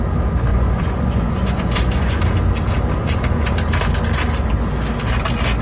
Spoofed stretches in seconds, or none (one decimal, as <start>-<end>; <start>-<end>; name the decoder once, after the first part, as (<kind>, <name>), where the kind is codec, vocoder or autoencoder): 0.5-2.2 (vocoder, Vocos); 3.0-3.5